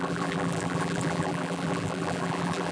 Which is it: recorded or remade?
remade